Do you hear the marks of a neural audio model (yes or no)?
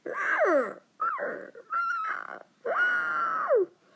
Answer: no